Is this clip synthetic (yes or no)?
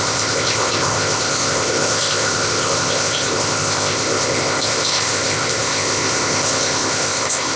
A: yes